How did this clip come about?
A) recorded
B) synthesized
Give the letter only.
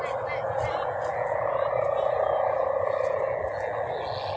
A